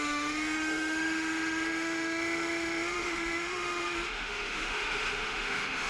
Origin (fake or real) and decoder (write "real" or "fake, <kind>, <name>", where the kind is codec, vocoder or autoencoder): fake, autoencoder, DAC-VAE